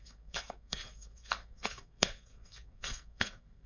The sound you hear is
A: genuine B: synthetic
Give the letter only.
B